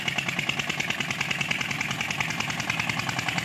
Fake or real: real